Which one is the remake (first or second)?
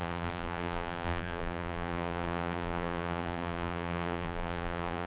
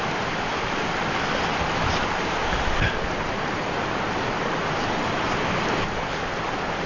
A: first